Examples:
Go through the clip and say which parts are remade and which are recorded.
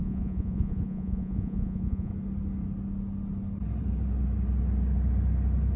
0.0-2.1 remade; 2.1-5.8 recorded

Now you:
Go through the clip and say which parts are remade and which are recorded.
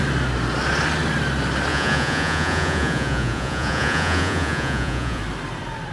0.0-1.7 recorded; 1.7-5.2 remade; 5.2-5.9 recorded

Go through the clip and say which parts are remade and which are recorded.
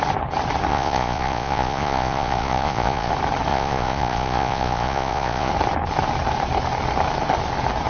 0.0-0.7 recorded; 0.7-3.1 remade; 3.1-3.5 recorded; 3.5-5.5 remade; 5.5-7.9 recorded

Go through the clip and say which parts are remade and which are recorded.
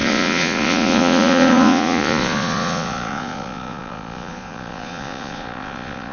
0.0-6.1 remade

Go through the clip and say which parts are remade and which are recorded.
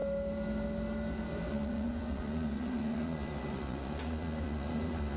0.0-1.5 recorded; 1.5-5.2 remade